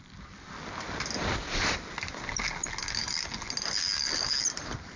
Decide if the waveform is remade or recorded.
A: recorded